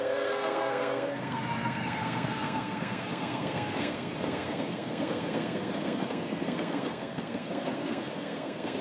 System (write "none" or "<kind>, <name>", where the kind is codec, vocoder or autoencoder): codec, SNAC